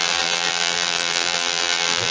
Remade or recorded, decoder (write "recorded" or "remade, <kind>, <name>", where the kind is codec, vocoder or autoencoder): remade, vocoder, BigVGAN v2